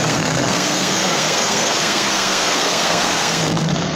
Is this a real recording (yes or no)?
no